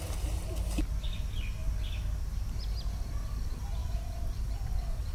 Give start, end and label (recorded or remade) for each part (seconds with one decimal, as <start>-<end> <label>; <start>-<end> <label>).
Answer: 0.0-3.8 recorded; 3.8-4.4 remade; 4.4-5.1 recorded